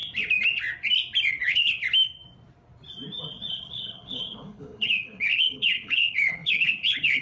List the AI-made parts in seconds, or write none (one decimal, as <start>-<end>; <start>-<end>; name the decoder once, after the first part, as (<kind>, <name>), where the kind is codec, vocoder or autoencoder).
1.3-1.8 (codec, HILCodec); 3.5-7.2